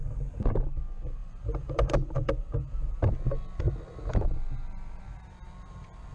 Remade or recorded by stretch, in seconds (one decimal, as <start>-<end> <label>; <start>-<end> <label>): 0.0-1.2 recorded; 1.2-2.4 remade; 2.4-6.1 recorded